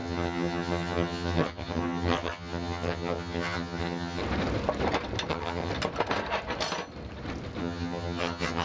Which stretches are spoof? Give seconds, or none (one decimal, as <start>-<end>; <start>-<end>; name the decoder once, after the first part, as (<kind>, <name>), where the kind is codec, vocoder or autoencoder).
0.0-4.2 (vocoder, HiFi-GAN); 5.3-5.7; 7.6-8.6